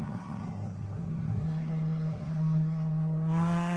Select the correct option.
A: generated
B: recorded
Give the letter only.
A